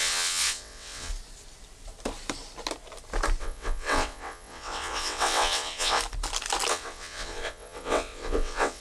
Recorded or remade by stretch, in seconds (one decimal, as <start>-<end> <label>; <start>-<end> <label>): 0.0-1.1 remade; 1.1-3.4 recorded; 3.4-6.0 remade; 6.0-6.7 recorded; 6.7-8.8 remade